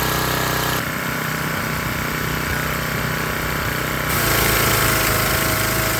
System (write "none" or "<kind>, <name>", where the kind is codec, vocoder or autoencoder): none